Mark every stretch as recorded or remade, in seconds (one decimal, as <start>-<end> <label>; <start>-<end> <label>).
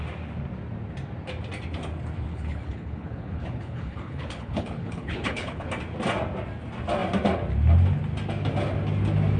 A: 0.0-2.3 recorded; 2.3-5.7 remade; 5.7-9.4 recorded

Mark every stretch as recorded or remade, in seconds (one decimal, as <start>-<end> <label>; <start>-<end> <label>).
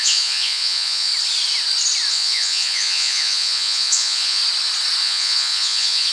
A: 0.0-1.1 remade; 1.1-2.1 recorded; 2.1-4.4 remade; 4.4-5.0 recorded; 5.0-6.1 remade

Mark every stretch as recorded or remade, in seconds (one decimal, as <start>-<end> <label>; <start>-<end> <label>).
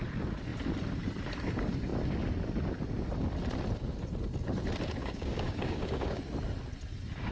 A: 0.0-5.0 recorded; 5.0-6.2 remade; 6.2-7.3 recorded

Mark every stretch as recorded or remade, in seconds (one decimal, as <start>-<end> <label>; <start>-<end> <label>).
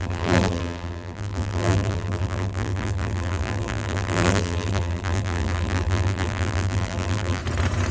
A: 0.0-7.4 remade; 7.4-7.9 recorded